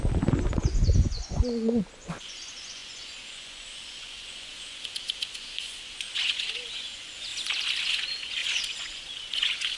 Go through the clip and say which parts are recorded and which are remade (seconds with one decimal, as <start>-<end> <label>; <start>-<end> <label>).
0.0-7.3 remade; 7.3-7.9 recorded; 7.9-9.8 remade